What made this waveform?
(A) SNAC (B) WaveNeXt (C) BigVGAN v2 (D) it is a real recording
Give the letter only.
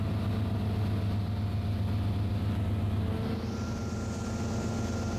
D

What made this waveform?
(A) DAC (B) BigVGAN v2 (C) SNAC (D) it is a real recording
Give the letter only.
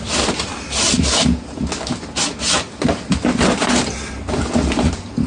D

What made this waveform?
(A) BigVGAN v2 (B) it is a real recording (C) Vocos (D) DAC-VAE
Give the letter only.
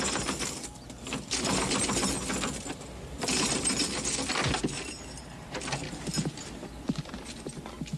B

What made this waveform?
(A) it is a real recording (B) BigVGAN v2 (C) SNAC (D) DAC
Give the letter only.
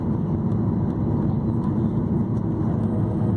A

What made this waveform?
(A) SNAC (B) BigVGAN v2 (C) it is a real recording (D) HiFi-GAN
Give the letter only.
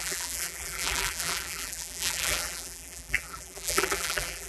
B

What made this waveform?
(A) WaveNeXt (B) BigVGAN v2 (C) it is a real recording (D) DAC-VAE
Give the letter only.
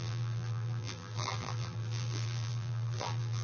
B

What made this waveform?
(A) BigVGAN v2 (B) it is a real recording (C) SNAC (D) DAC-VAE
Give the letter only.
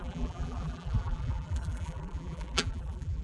A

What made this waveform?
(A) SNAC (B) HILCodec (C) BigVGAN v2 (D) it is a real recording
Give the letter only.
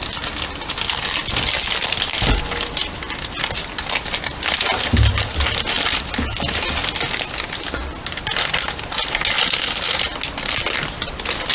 D